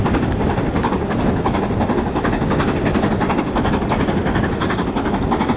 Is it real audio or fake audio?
real